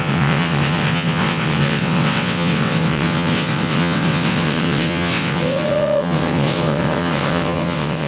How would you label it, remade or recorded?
remade